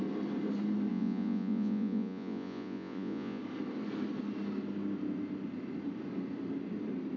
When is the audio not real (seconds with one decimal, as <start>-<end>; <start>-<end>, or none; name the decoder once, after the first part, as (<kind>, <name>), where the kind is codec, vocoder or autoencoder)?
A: 0.9-3.4 (vocoder, Vocos)

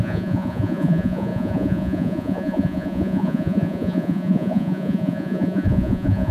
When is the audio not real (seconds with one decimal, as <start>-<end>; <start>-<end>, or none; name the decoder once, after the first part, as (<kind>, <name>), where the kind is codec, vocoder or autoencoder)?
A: 0.0-6.3 (vocoder, Vocos)

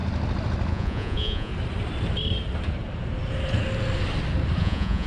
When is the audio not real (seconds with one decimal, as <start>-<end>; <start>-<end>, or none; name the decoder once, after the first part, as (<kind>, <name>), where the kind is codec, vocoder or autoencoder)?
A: 0.7-1.5 (vocoder, Vocos); 4.6-5.1